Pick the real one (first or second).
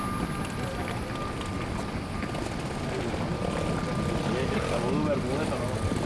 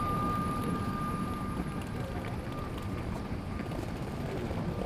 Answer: first